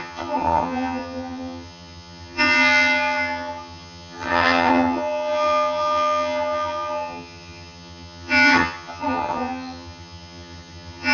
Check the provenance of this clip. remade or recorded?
remade